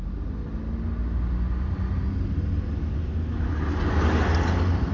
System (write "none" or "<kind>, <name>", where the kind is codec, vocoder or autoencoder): none